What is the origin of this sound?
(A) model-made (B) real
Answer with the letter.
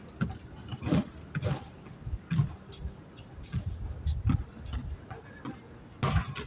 B